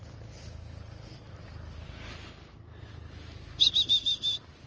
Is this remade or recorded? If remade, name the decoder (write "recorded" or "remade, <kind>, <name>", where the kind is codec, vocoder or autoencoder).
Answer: recorded